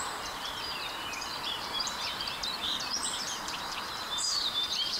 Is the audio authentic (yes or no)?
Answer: no